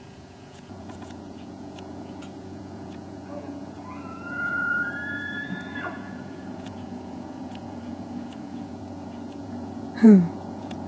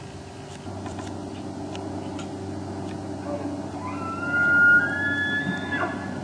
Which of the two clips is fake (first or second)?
first